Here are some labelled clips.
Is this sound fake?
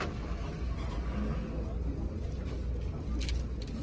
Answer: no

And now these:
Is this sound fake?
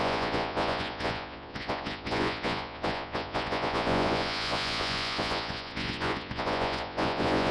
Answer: yes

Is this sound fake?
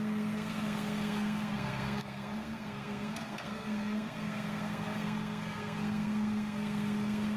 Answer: yes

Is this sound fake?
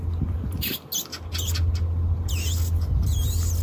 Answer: no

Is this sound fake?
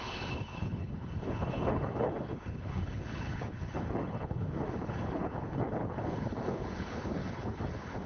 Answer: yes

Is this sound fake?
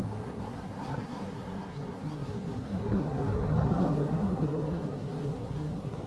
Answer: yes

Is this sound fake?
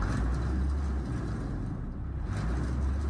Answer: no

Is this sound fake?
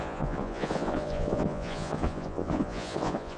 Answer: yes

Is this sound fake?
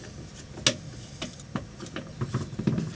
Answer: no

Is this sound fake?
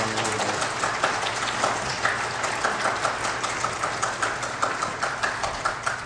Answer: no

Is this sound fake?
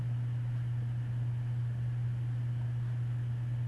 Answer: no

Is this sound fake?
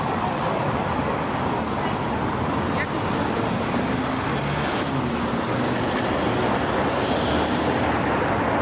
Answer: no